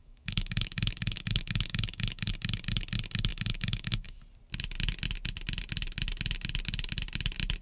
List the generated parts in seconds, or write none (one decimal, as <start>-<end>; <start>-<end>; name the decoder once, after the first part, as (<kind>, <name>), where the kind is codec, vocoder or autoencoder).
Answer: 0.0-2.3 (autoencoder, DAC-VAE); 3.3-4.2